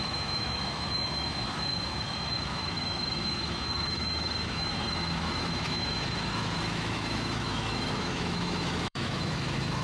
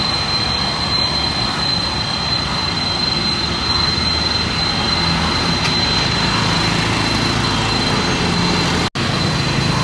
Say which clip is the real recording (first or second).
second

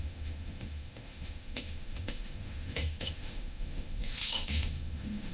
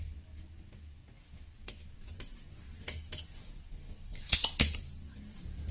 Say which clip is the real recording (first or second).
second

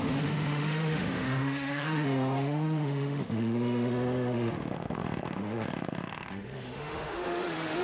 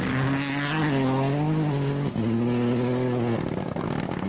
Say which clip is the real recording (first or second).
second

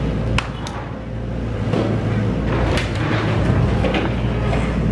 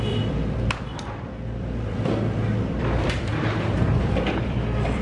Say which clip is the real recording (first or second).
first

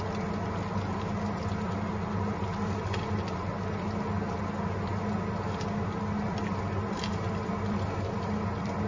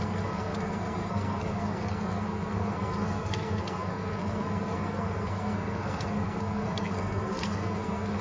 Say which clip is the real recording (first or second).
first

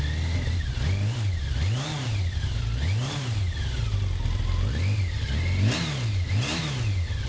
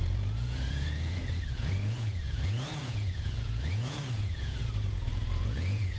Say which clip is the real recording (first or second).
first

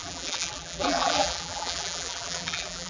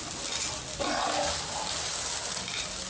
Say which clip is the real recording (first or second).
second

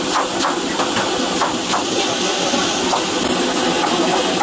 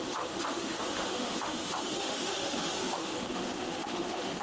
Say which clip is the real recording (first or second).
first